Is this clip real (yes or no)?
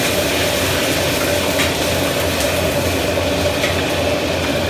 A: yes